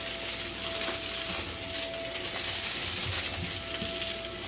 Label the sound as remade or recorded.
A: recorded